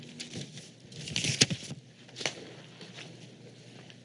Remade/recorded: recorded